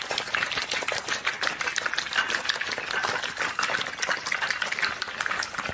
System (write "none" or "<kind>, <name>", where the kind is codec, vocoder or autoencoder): none